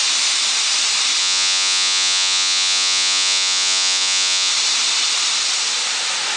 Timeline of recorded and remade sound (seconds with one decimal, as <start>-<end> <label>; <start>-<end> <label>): 0.0-1.2 recorded; 1.2-4.5 remade; 4.5-6.4 recorded